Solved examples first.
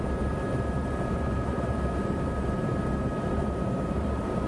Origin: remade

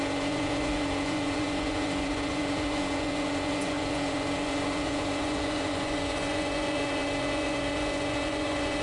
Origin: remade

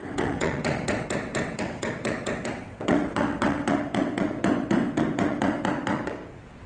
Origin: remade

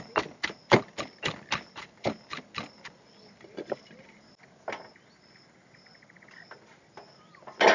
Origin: recorded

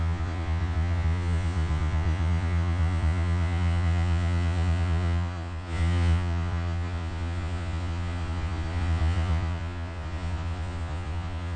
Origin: remade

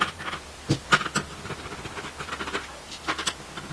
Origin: recorded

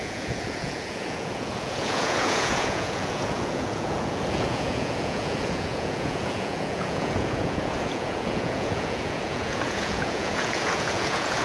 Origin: remade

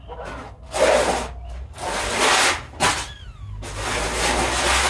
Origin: recorded